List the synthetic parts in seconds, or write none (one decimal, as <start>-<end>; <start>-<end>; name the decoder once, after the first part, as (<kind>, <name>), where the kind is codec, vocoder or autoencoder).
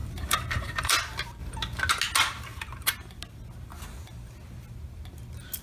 0.0-0.9 (vocoder, BigVGAN v2); 2.5-3.2